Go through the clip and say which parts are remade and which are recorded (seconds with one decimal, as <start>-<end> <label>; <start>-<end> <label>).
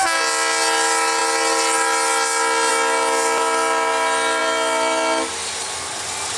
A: 0.0-6.4 recorded